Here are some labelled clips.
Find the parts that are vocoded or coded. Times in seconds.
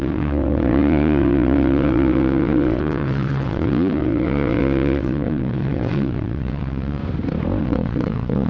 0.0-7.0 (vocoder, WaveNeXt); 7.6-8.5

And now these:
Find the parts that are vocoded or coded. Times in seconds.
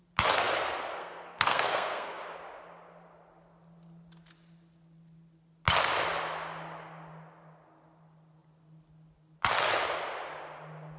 1.0-2.2 (codec, SNAC)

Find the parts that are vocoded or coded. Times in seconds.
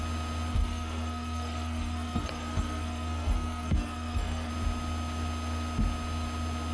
0.5-4.5 (codec, SNAC)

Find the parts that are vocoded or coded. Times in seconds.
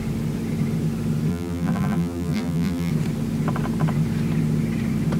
1.3-2.9 (vocoder, BigVGAN v2)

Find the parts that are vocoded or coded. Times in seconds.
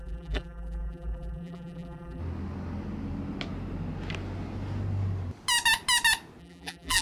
0.0-2.2 (vocoder, BigVGAN v2); 6.4-7.0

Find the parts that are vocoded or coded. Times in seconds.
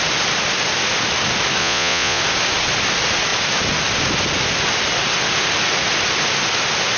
1.6-2.2 (vocoder, Vocos)